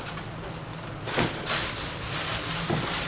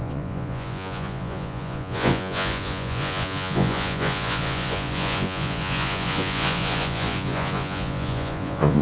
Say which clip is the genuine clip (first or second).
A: first